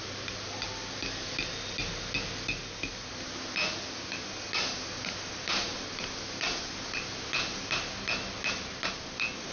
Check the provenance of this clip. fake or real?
real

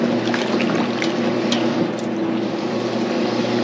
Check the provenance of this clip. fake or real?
real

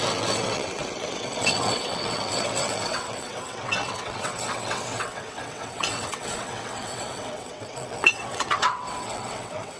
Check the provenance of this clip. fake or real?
fake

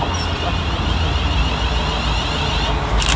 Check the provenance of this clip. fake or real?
real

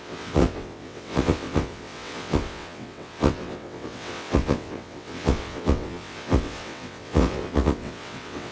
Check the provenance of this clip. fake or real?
fake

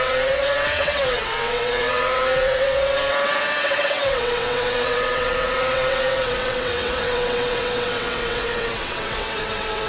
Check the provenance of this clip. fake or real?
fake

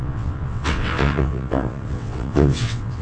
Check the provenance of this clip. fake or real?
fake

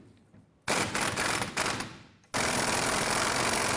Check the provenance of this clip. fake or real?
real